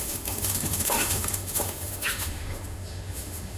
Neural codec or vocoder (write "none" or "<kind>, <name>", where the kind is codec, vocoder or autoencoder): autoencoder, DAC-VAE